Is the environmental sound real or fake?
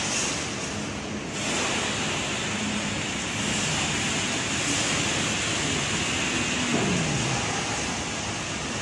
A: real